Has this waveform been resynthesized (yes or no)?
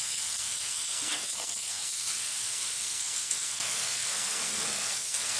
yes